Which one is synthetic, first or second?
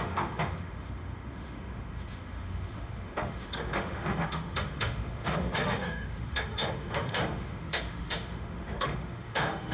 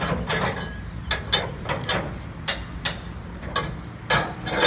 first